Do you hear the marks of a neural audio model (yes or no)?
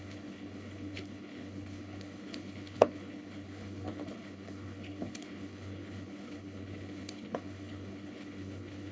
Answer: yes